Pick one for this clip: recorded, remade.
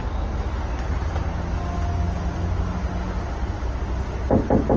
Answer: recorded